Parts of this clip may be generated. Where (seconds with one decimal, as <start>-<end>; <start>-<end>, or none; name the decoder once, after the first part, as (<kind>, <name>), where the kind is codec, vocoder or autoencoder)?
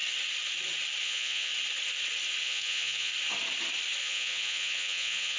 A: 1.0-1.5 (vocoder, Vocos); 2.4-3.1; 4.0-5.4